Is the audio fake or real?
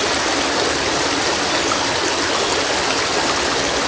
real